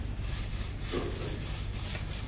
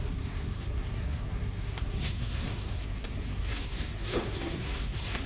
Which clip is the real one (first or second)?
first